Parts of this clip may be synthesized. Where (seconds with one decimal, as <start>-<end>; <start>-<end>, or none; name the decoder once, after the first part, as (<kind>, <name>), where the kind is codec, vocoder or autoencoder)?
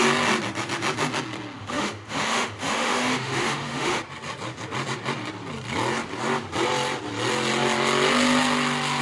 1.6-4.0 (autoencoder, DAC-VAE)